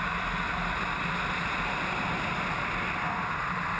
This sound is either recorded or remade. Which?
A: recorded